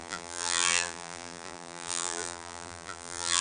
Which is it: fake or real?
fake